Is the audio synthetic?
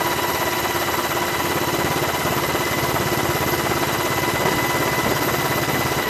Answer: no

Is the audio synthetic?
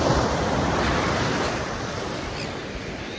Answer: no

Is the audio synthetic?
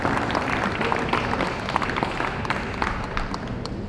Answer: no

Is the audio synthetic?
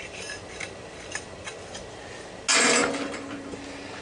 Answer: no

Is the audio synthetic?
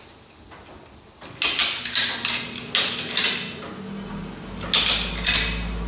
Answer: no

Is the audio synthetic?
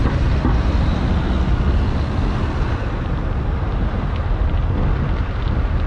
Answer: no